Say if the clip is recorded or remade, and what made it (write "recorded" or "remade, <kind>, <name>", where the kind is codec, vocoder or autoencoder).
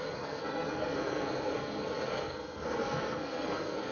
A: remade, codec, SNAC